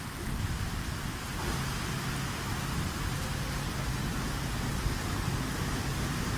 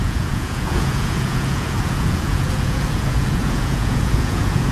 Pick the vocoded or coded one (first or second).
second